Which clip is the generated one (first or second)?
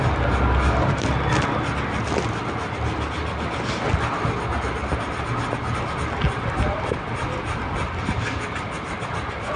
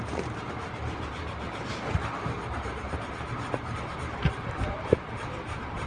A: second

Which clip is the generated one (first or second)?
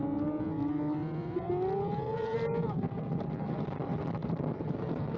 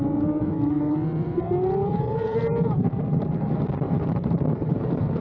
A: second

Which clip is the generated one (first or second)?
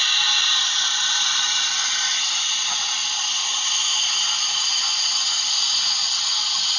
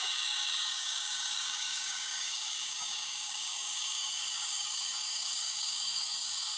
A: second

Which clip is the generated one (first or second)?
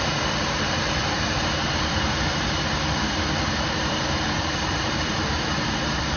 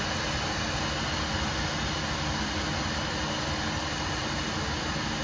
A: first